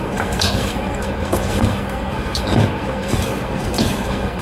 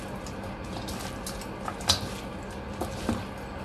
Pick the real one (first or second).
second